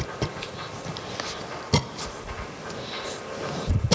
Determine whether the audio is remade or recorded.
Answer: recorded